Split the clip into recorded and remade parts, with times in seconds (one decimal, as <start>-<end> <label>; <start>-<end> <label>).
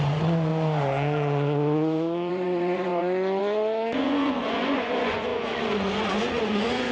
0.0-0.5 remade; 0.5-2.3 recorded; 2.3-6.9 remade